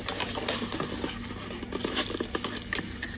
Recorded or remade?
recorded